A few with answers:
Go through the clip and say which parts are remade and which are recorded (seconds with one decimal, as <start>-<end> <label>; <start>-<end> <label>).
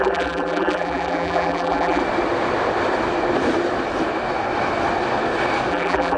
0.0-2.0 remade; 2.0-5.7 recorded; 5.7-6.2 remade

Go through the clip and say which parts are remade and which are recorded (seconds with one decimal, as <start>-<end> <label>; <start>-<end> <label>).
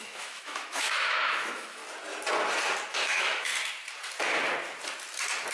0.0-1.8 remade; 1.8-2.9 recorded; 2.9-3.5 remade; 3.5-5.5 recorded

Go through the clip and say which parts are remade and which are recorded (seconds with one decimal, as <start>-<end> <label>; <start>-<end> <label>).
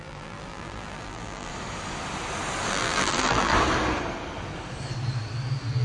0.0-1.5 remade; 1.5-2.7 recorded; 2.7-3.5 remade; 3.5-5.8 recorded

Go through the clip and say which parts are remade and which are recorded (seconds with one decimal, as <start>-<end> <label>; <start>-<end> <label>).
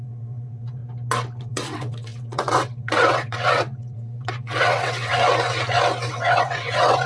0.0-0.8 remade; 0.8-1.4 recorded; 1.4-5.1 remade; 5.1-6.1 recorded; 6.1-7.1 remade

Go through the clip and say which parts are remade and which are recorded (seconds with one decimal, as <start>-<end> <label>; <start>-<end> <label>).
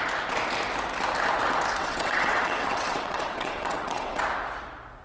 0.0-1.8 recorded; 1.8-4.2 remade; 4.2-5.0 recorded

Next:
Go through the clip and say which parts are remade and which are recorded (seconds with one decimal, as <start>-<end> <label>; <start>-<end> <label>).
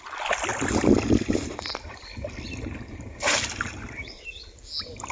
0.0-5.1 recorded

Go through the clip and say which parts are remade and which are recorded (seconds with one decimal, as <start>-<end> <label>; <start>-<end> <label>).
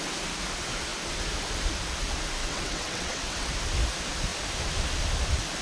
0.0-2.4 recorded; 2.4-3.5 remade; 3.5-5.6 recorded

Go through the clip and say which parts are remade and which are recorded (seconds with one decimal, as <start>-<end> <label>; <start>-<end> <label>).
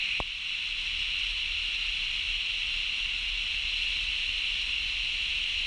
0.0-5.7 recorded